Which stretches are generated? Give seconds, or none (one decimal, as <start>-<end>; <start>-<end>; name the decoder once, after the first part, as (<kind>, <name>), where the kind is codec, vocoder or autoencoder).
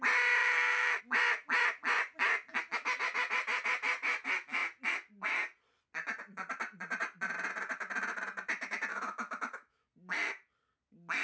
0.4-1.0 (autoencoder, DAC-VAE); 8.9-9.9